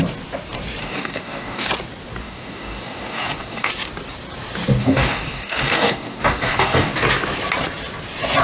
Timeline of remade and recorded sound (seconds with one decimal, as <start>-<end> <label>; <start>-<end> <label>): 0.0-0.8 recorded; 0.8-1.7 remade; 1.7-2.2 recorded; 2.2-3.7 remade; 3.7-4.8 recorded; 4.8-6.9 remade; 6.9-8.4 recorded